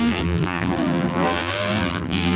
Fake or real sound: fake